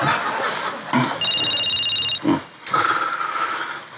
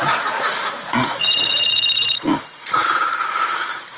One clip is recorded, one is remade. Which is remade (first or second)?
second